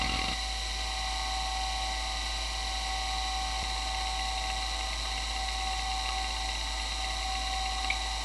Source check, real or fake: real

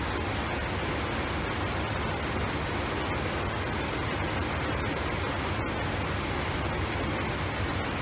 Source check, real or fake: real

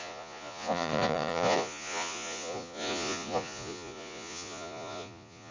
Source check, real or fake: fake